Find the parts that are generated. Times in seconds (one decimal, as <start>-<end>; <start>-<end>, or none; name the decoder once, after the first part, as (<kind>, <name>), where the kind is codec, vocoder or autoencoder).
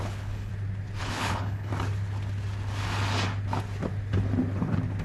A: 0.0-0.5 (codec, HILCodec); 1.0-1.7